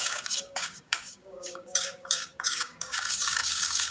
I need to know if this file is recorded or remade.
remade